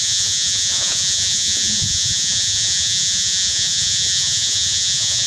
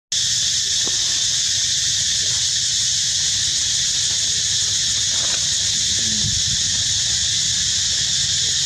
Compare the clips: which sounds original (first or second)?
second